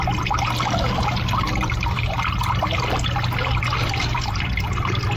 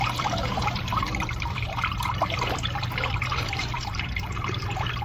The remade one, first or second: second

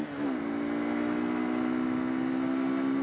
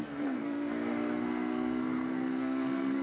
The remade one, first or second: second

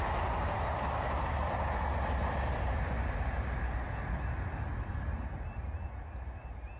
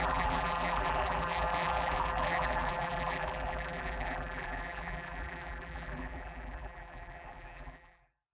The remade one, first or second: second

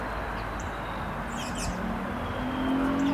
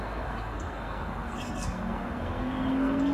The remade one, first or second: second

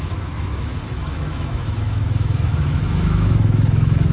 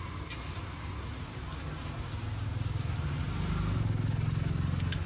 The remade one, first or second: first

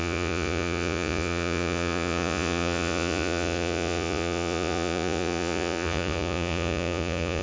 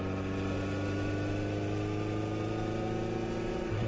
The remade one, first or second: first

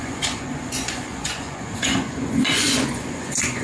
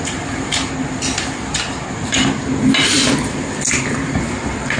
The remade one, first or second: first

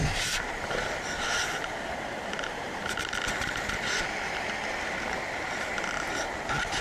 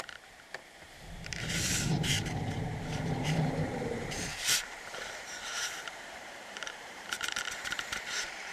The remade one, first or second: second